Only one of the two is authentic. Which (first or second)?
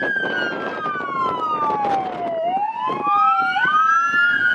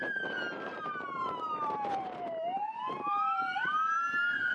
first